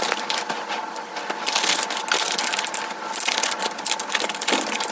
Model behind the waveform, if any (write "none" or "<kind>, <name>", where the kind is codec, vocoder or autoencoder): none